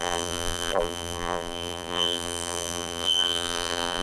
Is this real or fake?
fake